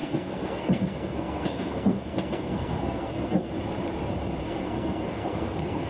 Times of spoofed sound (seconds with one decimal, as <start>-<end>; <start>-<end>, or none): 0.0-3.5; 4.4-5.9